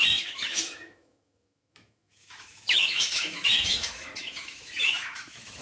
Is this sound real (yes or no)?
no